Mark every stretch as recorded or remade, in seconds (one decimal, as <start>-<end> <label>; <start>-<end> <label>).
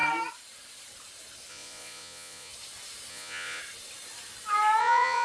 0.0-1.5 recorded; 1.5-2.5 remade; 2.5-3.1 recorded; 3.1-3.6 remade; 3.6-4.8 recorded; 4.8-5.2 remade